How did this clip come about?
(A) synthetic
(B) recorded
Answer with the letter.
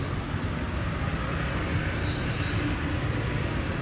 B